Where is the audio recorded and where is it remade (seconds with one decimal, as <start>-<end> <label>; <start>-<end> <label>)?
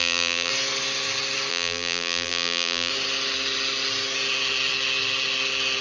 0.0-0.5 remade; 0.5-1.5 recorded; 1.5-2.9 remade; 2.9-5.8 recorded